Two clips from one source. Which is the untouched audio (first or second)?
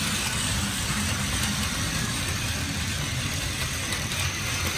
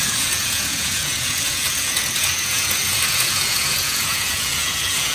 first